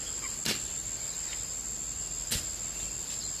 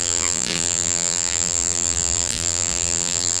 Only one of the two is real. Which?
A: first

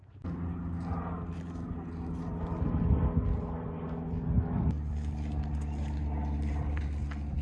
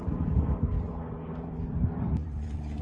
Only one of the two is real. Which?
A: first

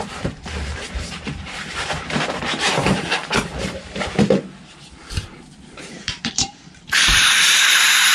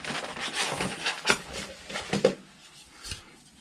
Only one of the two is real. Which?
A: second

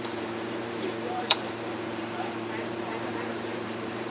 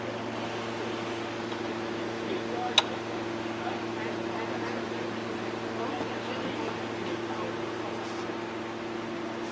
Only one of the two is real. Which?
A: second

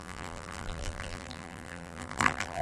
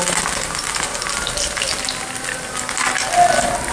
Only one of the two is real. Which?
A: second